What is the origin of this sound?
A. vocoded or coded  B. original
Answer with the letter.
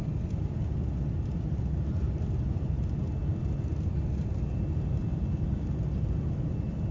B